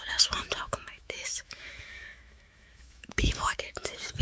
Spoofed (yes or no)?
yes